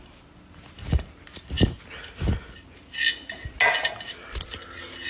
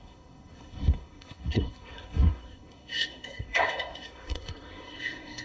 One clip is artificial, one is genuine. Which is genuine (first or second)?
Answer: first